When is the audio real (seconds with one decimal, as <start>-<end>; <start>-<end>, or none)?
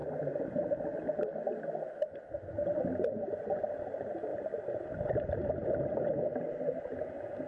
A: 0.0-7.5